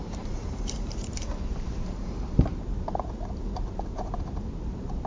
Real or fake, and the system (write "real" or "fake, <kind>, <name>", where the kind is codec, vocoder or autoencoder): fake, vocoder, BigVGAN v2